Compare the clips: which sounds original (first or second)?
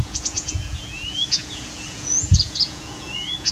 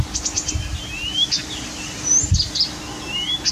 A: second